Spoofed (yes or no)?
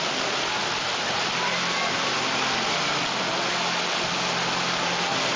no